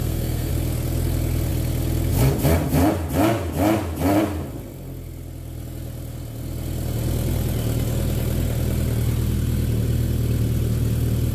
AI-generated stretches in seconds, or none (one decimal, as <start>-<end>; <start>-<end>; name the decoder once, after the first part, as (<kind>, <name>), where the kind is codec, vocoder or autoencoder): 0.0-0.5 (codec, SNAC)